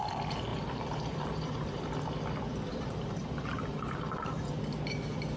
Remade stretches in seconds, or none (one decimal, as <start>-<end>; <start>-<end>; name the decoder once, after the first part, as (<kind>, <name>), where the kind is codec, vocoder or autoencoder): 0.5-1.8 (vocoder, BigVGAN v2); 2.7-4.5